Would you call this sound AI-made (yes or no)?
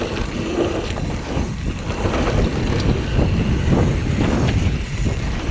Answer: no